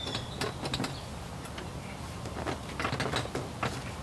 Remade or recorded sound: recorded